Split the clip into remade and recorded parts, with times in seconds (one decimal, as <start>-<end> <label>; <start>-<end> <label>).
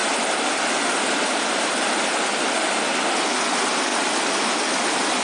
0.0-3.9 recorded; 3.9-5.2 remade